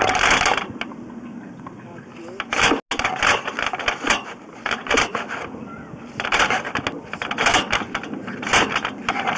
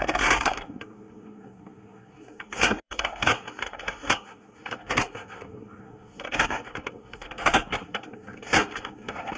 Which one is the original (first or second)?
first